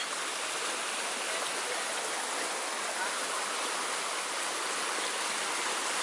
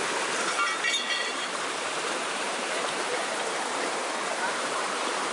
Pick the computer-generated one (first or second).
second